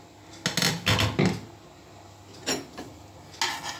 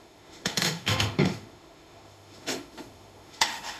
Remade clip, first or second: second